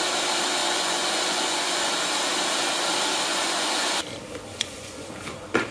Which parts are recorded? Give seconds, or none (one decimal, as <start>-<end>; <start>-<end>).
0.0-0.6; 1.9-3.3; 4.0-4.5; 5.1-5.7